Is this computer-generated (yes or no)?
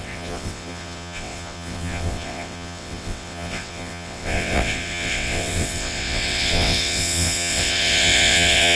yes